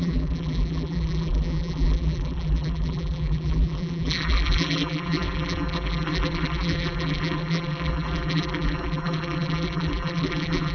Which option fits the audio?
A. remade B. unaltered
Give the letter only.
A